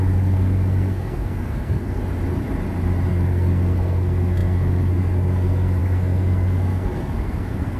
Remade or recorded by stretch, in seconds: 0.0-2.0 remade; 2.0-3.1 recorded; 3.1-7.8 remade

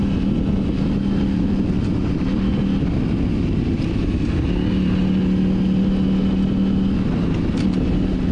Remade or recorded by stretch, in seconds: 0.0-8.3 recorded

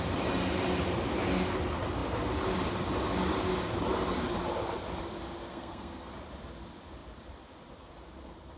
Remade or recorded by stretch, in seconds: 0.0-5.5 recorded; 5.5-6.1 remade; 6.1-8.6 recorded

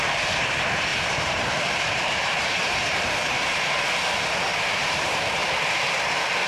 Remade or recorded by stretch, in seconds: 0.0-5.4 remade; 5.4-5.9 recorded; 5.9-6.5 remade

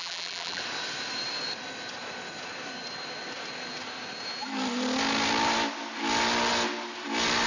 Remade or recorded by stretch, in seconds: 0.0-0.6 remade; 0.6-7.5 recorded

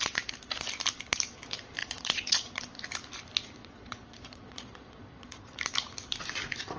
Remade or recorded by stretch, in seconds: 0.0-1.8 recorded; 1.8-2.6 remade; 2.6-3.6 recorded; 3.6-5.5 remade; 5.5-6.8 recorded